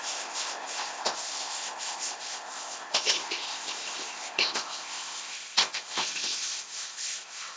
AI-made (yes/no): yes